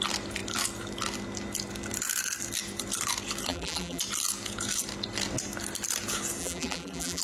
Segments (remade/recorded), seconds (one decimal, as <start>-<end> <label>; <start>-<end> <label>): 0.0-3.5 recorded; 3.5-4.0 remade; 4.0-6.4 recorded; 6.4-7.2 remade